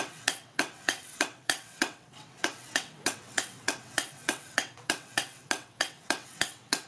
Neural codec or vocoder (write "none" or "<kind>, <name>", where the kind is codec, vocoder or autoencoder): vocoder, WaveNeXt